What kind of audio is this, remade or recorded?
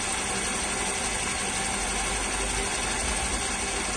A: recorded